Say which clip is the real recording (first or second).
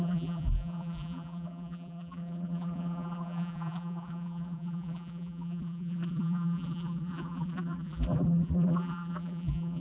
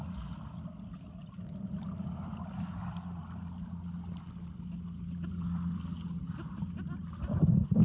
second